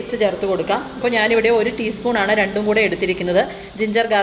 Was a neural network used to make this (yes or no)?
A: no